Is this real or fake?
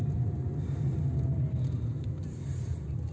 real